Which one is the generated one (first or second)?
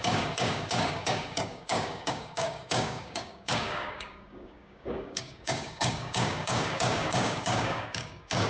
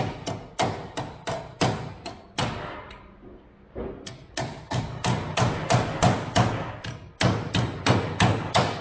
first